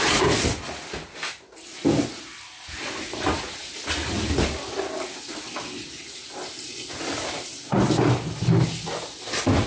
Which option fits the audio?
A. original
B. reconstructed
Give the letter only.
A